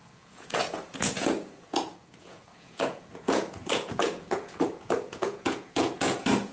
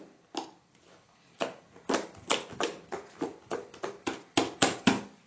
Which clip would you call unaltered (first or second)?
second